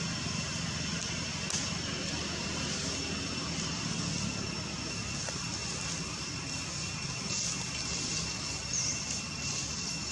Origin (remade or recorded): recorded